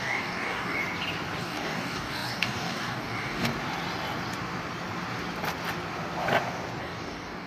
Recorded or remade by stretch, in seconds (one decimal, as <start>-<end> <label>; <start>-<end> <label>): 0.0-0.8 remade; 0.8-1.4 recorded; 1.4-3.5 remade; 3.5-6.8 recorded; 6.8-7.5 remade